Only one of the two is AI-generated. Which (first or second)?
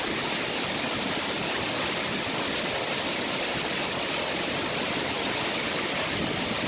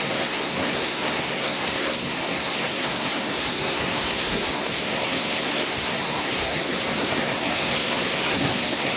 second